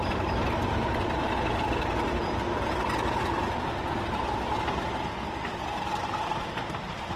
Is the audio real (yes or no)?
yes